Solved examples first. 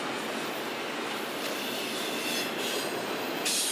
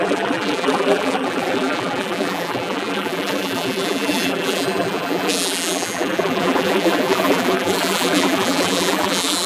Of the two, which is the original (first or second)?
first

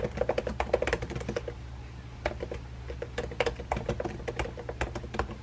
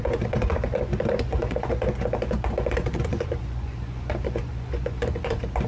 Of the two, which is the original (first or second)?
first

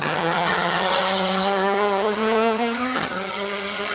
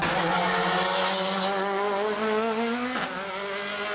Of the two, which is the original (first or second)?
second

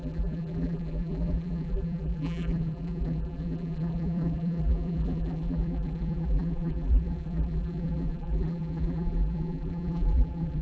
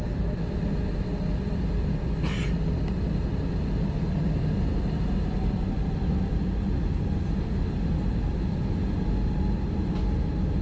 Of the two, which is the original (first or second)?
second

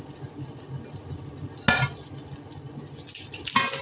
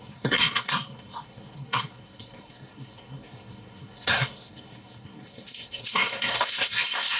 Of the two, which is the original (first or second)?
first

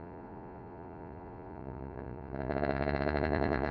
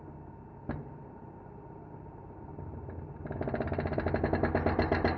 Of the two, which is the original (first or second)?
second